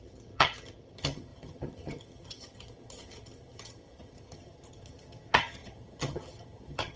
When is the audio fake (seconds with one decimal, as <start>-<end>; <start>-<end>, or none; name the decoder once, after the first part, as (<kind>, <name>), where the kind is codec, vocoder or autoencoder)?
0.0-7.0 (vocoder, HiFi-GAN)

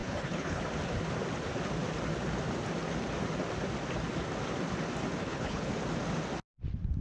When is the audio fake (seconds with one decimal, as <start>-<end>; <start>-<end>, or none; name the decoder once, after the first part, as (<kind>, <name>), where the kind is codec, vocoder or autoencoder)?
0.0-0.6 (codec, HILCodec); 5.2-5.7

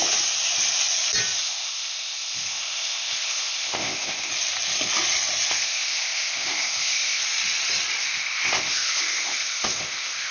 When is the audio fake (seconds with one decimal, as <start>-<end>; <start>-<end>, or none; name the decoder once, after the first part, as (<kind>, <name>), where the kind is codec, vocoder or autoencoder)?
1.4-4.3 (codec, ZipCodec); 5.5-7.2; 8.0-10.3

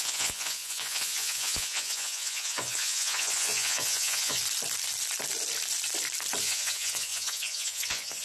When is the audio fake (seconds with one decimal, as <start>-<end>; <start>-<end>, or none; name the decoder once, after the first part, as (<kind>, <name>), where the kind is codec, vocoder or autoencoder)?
0.0-4.4 (vocoder, Vocos); 6.4-8.2

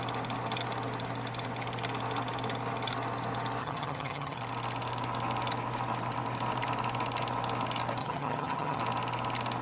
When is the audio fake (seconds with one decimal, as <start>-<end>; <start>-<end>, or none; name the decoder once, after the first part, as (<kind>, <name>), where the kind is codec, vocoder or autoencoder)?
3.6-4.4 (vocoder, HiFi-GAN); 8.0-8.8

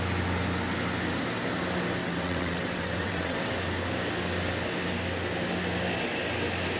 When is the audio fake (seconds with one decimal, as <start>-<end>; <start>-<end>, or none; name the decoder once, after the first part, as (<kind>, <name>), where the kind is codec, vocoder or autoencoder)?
2.0-3.5 (vocoder, WaveNeXt)

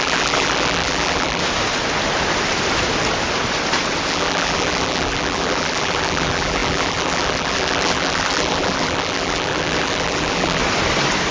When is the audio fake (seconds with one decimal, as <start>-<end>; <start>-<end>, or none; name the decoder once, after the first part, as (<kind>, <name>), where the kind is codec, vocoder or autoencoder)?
0.0-1.4 (vocoder, BigVGAN v2); 4.1-10.6